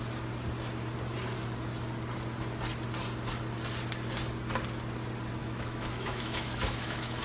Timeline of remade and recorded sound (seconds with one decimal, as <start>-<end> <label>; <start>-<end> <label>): 0.0-5.4 recorded; 5.4-7.2 remade